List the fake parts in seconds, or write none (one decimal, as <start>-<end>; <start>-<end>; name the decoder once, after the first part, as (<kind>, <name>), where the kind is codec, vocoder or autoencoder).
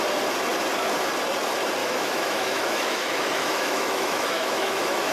1.8-5.1 (autoencoder, DAC-VAE)